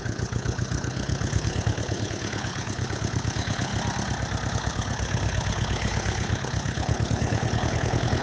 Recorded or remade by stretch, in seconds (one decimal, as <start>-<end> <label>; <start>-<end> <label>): 0.0-3.7 remade; 3.7-4.5 recorded; 4.5-8.2 remade